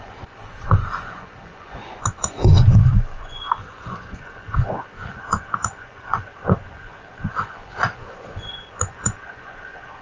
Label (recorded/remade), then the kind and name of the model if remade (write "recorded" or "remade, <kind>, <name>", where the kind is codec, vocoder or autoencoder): remade, vocoder, Vocos